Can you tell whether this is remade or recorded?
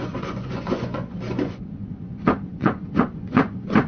remade